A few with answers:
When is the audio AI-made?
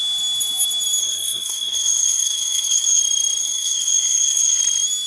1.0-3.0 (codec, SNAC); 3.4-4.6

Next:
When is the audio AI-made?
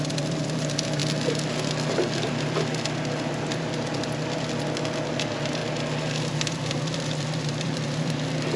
0.0-1.0 (vocoder, BigVGAN v2); 1.9-5.6; 6.3-8.6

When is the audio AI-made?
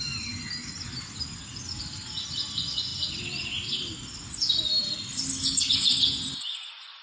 none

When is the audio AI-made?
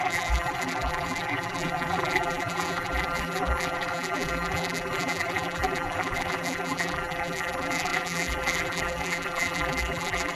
0.0-10.4 (vocoder, BigVGAN v2)